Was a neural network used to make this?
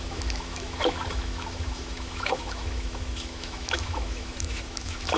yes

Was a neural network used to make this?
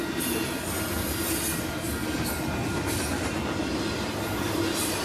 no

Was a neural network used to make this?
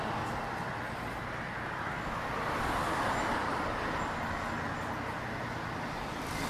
no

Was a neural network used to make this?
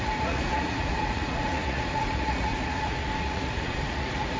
yes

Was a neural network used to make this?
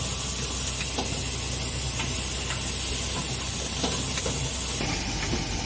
no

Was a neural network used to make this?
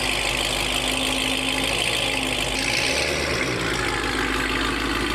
no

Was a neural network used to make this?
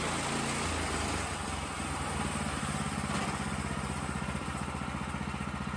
no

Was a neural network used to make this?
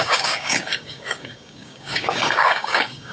yes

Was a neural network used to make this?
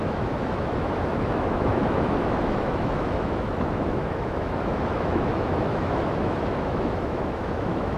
yes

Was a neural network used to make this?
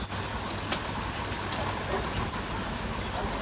no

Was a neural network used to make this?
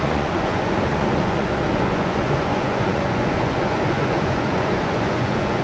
yes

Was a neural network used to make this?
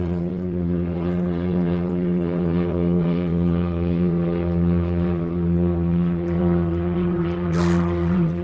yes